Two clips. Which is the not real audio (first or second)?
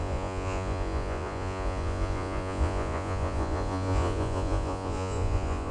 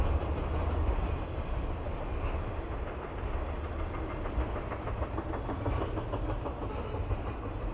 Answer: first